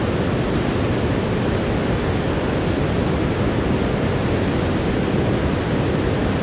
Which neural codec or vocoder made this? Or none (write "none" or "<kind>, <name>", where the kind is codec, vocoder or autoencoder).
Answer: none